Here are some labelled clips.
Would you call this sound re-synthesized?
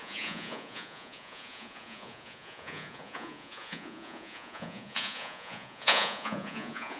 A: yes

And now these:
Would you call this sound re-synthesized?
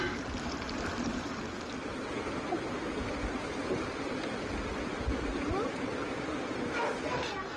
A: no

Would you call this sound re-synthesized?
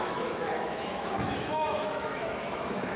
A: yes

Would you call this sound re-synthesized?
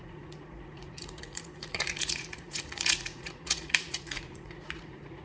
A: yes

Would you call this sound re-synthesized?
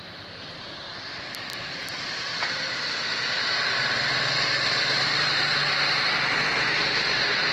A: yes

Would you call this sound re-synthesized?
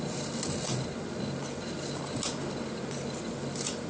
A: no